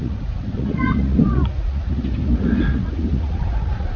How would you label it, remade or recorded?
remade